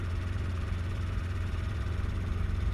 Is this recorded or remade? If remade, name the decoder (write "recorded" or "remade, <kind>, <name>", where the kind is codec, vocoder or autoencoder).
remade, vocoder, BigVGAN v2